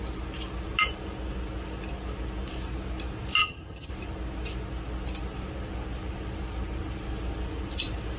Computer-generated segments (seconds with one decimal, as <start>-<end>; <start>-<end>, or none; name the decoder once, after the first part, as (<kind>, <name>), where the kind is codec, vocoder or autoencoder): 3.4-3.9 (vocoder, HiFi-GAN)